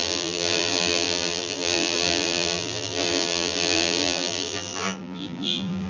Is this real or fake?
fake